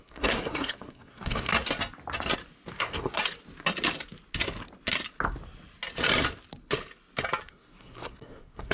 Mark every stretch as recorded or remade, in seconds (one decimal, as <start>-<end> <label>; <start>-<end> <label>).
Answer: 0.0-1.5 remade; 1.5-2.7 recorded; 2.7-3.2 remade; 3.2-7.5 recorded; 7.5-8.7 remade